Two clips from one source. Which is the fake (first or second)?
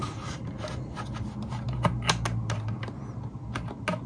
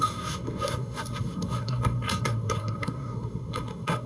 second